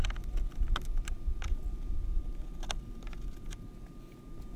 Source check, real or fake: real